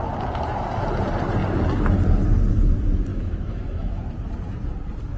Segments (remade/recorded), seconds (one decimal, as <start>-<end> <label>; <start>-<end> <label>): 0.0-3.1 recorded; 3.1-4.0 remade; 4.0-5.2 recorded